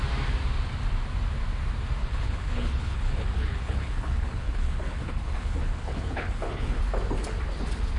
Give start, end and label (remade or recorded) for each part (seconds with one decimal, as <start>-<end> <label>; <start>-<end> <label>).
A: 0.0-2.0 recorded; 2.0-6.8 remade; 6.8-8.0 recorded